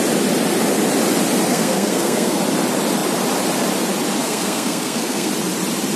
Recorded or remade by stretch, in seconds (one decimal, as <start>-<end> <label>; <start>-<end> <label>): 0.0-1.5 recorded; 1.5-2.4 remade; 2.4-4.2 recorded; 4.2-5.3 remade; 5.3-6.0 recorded